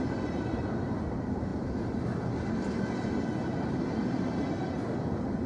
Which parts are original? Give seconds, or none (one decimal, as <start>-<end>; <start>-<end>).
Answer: 0.0-5.5